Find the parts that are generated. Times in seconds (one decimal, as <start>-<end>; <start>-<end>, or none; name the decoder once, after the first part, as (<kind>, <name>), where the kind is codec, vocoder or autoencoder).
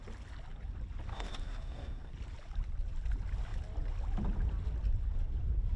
1.1-2.1 (codec, DAC)